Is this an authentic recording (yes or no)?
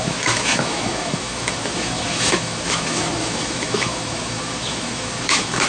no